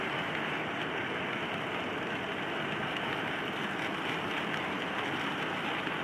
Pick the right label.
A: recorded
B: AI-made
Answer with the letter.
A